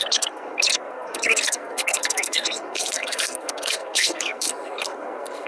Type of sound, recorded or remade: remade